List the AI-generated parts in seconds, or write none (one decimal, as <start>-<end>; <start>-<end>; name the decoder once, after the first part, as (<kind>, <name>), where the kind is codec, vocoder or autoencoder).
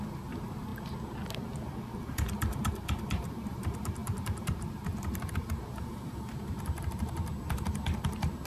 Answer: 0.0-0.7 (vocoder, BigVGAN v2); 2.0-8.5